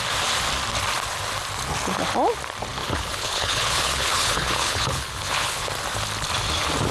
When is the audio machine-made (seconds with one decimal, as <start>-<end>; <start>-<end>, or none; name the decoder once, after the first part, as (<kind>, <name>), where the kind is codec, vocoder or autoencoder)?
2.8-5.7 (codec, HILCodec)